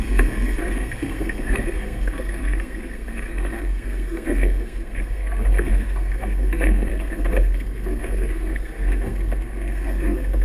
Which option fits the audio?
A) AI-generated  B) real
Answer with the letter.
A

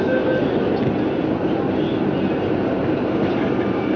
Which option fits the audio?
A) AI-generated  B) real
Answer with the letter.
B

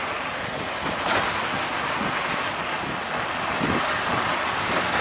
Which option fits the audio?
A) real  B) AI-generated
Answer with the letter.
A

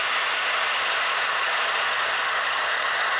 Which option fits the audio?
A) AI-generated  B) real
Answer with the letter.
B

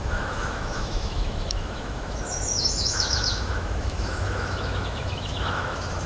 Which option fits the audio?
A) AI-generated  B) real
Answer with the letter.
A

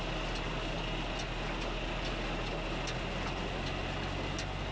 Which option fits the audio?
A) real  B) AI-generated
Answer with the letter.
A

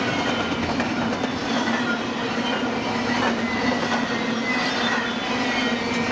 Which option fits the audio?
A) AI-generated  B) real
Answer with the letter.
B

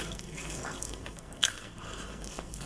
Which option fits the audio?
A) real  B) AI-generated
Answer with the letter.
B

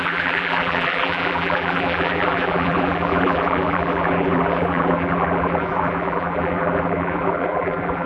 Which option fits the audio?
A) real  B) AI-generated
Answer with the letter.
B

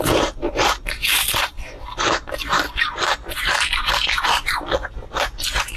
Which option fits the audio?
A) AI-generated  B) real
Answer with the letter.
A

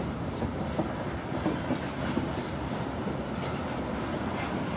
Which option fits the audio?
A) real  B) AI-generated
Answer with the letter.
A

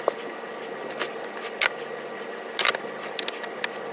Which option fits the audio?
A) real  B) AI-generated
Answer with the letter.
A